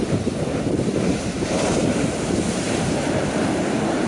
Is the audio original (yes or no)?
no